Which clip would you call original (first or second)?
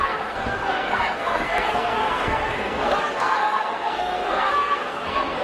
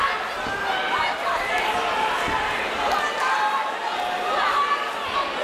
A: second